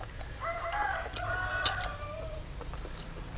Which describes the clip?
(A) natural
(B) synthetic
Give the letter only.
A